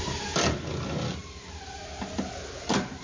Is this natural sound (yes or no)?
yes